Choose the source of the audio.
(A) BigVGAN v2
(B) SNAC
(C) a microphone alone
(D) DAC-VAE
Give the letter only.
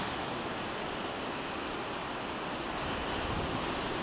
C